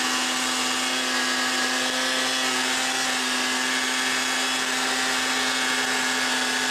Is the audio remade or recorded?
recorded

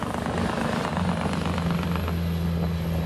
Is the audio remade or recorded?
recorded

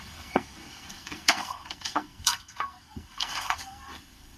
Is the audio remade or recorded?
remade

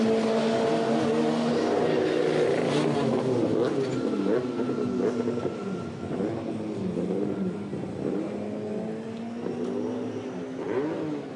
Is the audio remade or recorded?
recorded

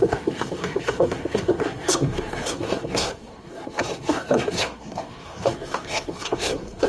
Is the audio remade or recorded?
remade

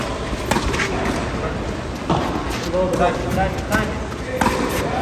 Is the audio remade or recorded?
recorded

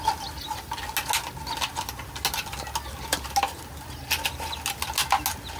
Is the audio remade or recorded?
recorded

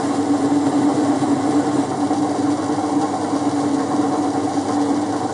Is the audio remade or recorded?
recorded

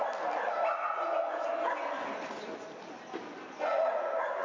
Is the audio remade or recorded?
recorded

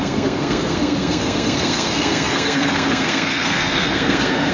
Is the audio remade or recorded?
remade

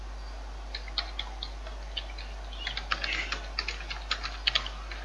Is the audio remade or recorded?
recorded